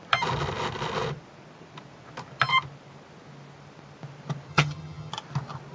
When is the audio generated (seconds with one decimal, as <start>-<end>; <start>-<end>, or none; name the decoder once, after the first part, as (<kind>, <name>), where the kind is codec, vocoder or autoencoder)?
4.5-5.1 (vocoder, HiFi-GAN)